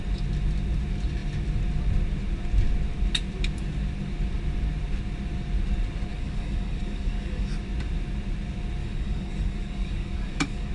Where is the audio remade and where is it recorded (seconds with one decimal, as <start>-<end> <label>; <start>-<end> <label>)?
0.0-6.1 recorded; 6.1-7.5 remade; 7.5-8.8 recorded; 8.8-10.7 remade